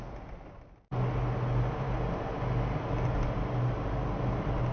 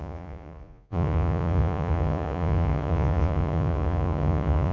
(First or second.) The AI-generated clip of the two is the second